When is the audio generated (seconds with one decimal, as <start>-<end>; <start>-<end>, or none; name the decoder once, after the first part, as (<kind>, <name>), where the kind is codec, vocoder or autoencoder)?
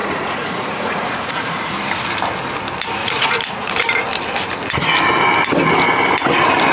0.0-1.7 (vocoder, Vocos); 3.0-3.7